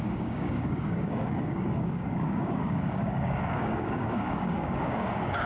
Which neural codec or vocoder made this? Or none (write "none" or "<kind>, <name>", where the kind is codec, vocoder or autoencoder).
codec, DAC